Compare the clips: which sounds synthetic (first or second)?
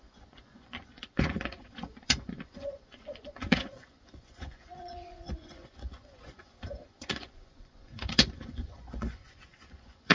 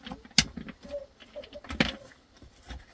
first